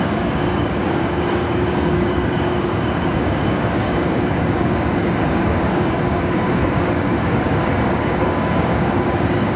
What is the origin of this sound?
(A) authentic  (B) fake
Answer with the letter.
B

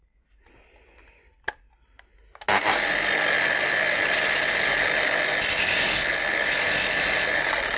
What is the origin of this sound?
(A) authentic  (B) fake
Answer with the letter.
A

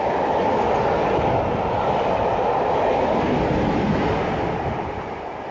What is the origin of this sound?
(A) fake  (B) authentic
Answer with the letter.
B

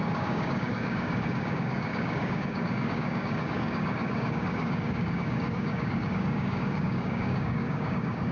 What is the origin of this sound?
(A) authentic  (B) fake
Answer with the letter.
B